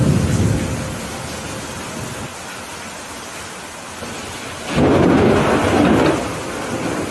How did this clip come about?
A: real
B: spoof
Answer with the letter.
A